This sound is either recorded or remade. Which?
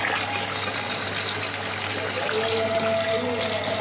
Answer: recorded